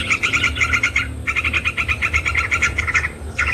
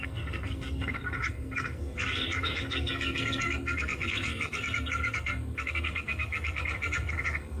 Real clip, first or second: first